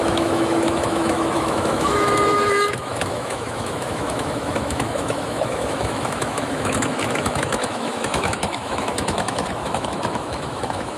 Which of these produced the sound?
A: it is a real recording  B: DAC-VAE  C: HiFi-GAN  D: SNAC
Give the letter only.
B